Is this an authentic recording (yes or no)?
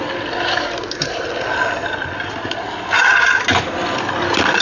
yes